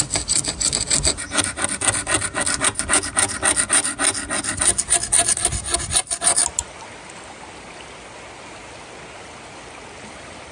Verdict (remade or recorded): recorded